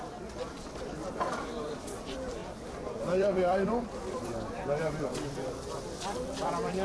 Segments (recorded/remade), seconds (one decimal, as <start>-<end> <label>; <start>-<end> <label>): 0.0-6.8 remade